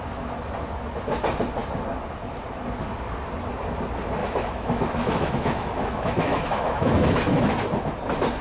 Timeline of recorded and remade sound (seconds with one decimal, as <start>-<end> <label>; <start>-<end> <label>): 0.0-4.2 recorded; 4.2-7.5 remade; 7.5-8.4 recorded